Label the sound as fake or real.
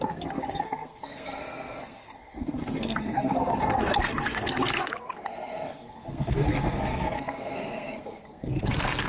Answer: fake